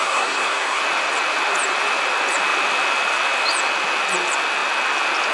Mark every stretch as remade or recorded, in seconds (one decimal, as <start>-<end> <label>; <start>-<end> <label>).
0.0-0.8 remade; 0.8-5.3 recorded